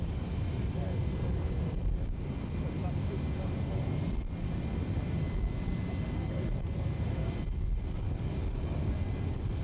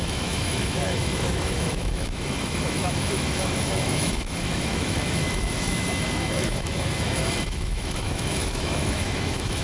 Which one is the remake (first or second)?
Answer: second